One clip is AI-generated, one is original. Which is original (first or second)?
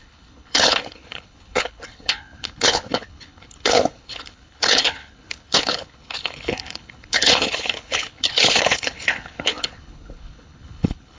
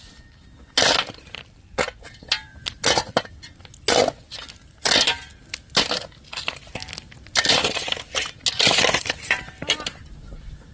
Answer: second